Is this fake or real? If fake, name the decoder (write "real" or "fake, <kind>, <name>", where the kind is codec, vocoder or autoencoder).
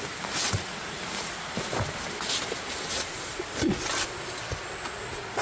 real